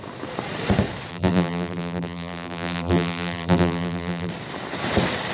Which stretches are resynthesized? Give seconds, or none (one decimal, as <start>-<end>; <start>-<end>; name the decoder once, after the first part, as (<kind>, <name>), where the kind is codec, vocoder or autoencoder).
1.1-4.3 (vocoder, BigVGAN v2)